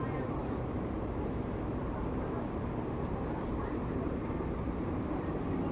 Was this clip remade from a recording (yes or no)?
yes